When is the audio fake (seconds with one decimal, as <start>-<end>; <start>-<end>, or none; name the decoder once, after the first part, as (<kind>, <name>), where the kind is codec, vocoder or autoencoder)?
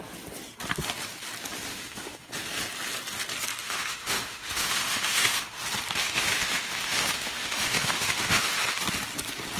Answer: 1.7-2.3 (autoencoder, DAC-VAE); 3.6-5.6; 6.0-8.6